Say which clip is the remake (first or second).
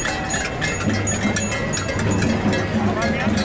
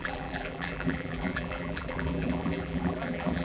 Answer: second